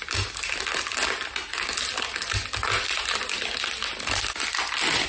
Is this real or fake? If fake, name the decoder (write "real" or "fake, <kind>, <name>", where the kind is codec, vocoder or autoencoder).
real